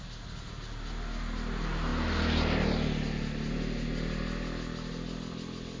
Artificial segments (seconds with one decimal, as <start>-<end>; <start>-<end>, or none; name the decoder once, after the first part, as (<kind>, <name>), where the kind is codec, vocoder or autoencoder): none